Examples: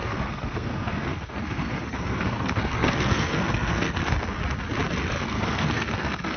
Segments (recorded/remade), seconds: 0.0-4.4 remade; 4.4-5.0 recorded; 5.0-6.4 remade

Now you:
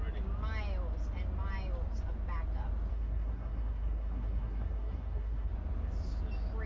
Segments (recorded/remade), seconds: 0.0-2.9 recorded; 2.9-5.5 remade; 5.5-6.7 recorded

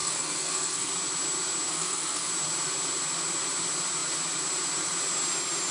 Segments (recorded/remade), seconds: 0.0-0.9 remade; 0.9-1.7 recorded; 1.7-2.3 remade; 2.3-5.7 recorded

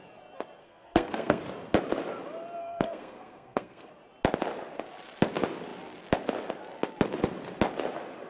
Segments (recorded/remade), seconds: 0.0-0.6 recorded; 0.6-1.4 remade; 1.4-2.6 recorded; 2.6-3.9 remade; 3.9-8.3 recorded

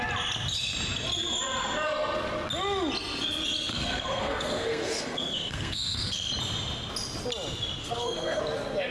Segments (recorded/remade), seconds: 0.0-3.7 recorded; 3.7-6.3 remade; 6.3-7.8 recorded; 7.8-8.4 remade; 8.4-8.9 recorded

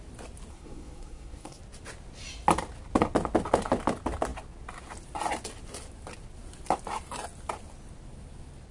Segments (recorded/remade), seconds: 0.0-0.5 recorded; 0.5-1.6 remade; 1.6-8.7 recorded

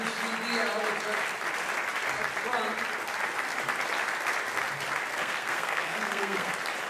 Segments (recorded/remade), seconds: 0.0-5.1 recorded; 5.1-6.5 remade; 6.5-6.9 recorded